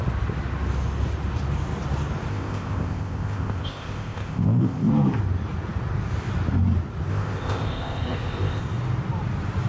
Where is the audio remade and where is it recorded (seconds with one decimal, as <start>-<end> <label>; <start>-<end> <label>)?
0.0-2.3 recorded; 2.3-4.9 remade; 4.9-7.1 recorded; 7.1-8.6 remade; 8.6-9.7 recorded